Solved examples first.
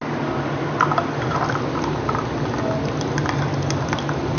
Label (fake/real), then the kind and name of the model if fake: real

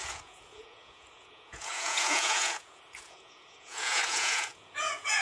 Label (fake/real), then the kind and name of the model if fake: fake, vocoder, Vocos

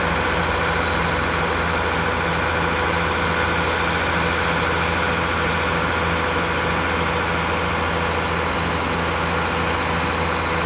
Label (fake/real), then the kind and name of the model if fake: real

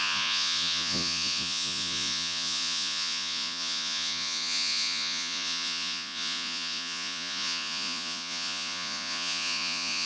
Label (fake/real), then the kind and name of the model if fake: fake, vocoder, Vocos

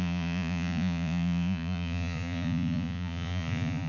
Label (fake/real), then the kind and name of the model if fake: fake, vocoder, Vocos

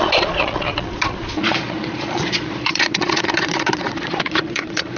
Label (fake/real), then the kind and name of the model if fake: fake, vocoder, Vocos